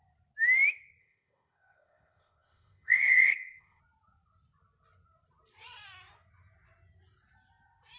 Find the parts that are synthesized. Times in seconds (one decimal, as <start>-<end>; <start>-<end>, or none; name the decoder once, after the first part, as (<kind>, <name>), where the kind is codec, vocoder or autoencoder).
1.0-3.8 (codec, ZipCodec)